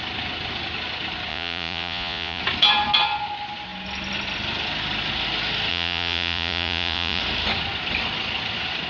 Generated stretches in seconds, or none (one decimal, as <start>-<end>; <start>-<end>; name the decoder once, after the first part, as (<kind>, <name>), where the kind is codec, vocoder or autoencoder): 1.3-2.4 (vocoder, Vocos); 5.7-7.2